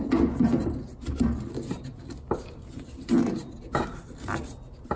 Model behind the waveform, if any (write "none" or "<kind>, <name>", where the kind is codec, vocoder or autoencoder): none